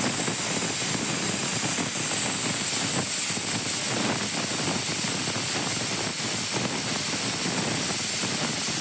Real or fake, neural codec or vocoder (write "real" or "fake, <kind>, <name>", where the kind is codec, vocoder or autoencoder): real